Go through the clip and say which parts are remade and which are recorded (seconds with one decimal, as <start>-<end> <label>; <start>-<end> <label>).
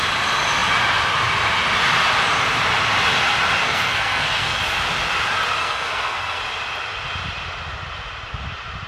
0.0-3.6 recorded; 3.6-4.6 remade; 4.6-5.6 recorded; 5.6-6.4 remade; 6.4-8.9 recorded